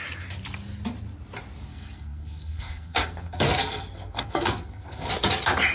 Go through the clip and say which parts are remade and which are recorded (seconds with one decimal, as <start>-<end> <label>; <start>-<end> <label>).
0.0-1.7 recorded; 1.7-5.1 remade; 5.1-5.7 recorded